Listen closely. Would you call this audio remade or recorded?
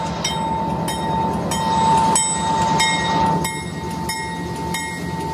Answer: recorded